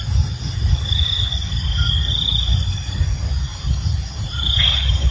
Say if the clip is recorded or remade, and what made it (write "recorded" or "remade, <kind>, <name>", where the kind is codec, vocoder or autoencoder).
recorded